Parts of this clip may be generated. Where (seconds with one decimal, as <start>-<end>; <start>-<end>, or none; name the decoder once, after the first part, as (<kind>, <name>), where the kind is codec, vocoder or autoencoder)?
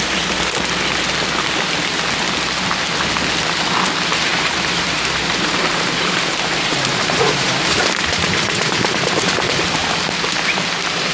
4.3-9.2 (vocoder, BigVGAN v2)